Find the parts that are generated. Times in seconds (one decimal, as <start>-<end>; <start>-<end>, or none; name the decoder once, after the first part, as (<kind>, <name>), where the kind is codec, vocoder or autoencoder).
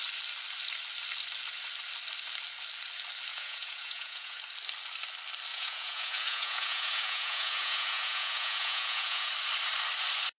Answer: 3.3-4.4 (vocoder, Vocos); 5.5-9.3